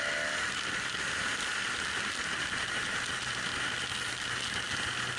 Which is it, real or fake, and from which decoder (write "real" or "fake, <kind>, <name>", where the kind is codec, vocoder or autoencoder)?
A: real